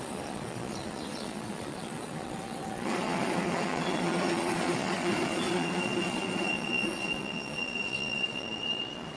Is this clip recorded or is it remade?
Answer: remade